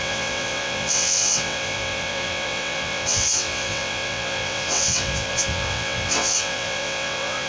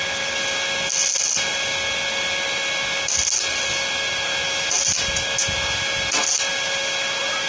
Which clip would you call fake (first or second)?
first